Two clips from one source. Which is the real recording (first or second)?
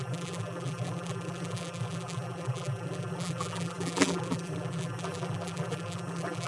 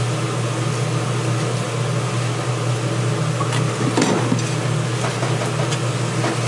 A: second